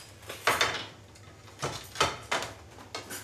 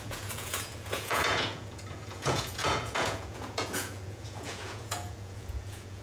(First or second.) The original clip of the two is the first